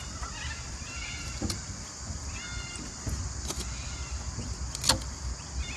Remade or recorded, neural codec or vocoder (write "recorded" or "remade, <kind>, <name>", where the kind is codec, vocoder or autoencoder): recorded